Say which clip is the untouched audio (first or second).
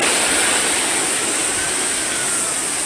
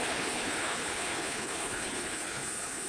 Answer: first